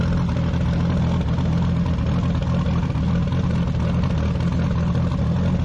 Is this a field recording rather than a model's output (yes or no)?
yes